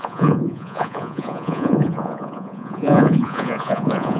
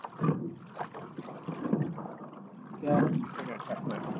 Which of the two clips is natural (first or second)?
second